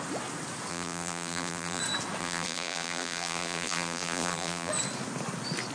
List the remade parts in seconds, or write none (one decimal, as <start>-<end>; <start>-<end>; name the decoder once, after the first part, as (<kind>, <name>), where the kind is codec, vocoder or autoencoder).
0.7-1.8 (vocoder, BigVGAN v2); 2.2-4.7